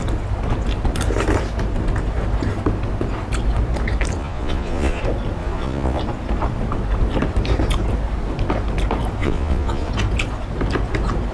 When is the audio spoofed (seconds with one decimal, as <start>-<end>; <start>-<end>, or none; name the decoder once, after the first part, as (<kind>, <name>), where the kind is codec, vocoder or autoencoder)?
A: 4.2-5.0 (vocoder, Vocos); 5.4-6.0; 9.2-9.9